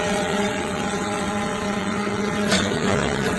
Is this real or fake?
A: fake